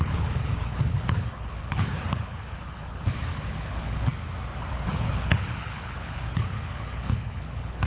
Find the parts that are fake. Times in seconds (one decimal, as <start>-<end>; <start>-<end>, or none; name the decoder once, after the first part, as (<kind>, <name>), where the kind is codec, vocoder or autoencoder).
0.0-4.1 (codec, HILCodec); 4.7-7.9